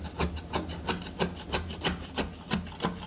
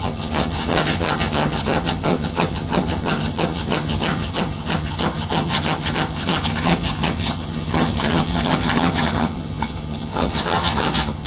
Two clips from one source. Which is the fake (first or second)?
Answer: second